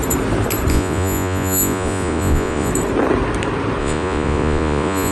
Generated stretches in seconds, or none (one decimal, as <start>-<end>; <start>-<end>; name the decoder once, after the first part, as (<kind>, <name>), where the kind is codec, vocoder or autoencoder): 0.7-2.7 (vocoder, Vocos); 3.8-5.1